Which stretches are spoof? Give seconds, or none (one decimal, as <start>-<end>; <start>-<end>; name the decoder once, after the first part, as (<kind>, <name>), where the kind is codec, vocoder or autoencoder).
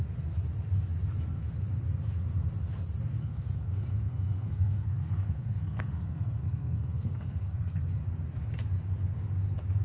3.2-7.9 (codec, SNAC)